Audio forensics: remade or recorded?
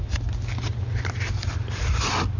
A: recorded